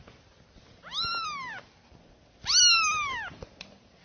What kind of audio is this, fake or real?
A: real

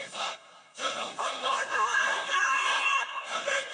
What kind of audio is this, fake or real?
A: fake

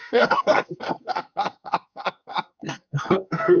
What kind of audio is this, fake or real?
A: fake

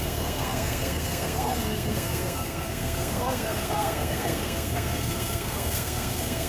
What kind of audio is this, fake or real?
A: fake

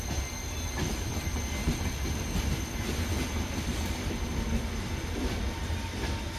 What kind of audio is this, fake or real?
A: real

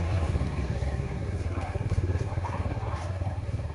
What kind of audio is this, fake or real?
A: fake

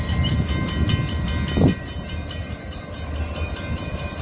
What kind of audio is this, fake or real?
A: real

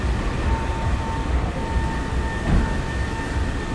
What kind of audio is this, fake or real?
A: real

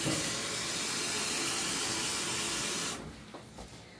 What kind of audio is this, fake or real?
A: real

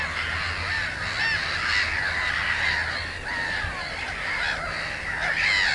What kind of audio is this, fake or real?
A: real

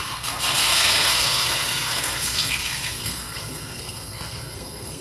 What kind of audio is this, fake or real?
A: fake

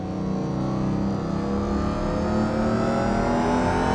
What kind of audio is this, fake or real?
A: real